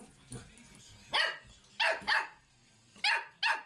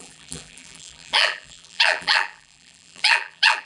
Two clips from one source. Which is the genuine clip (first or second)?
first